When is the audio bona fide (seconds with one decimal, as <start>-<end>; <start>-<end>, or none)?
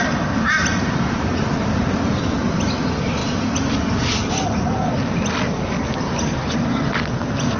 0.0-0.7; 2.4-3.2; 3.9-5.5; 6.0-7.6